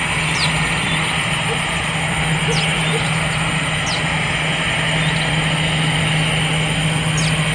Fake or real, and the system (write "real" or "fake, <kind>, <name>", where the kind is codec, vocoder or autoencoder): real